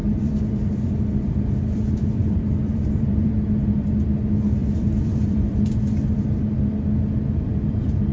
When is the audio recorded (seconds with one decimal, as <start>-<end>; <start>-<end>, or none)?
3.3-4.6; 5.6-8.1